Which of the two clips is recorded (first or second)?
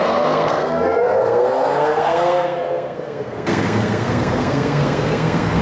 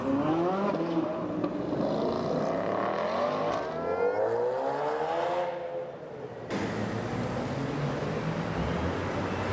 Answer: second